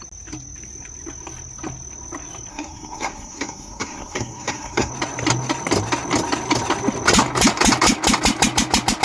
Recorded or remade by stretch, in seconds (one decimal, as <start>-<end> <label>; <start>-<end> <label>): 0.0-2.5 recorded; 2.5-4.9 remade; 4.9-9.0 recorded